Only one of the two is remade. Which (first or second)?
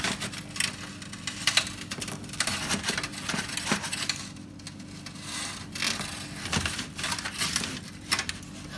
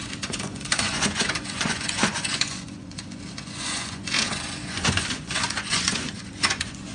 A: second